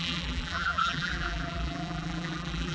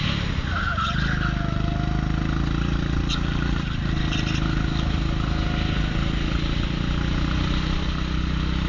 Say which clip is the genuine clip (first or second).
second